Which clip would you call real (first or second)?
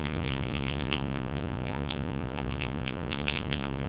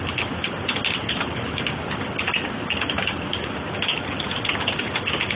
second